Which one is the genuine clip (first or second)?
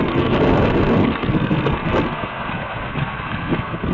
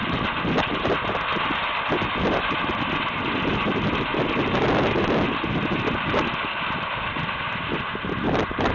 second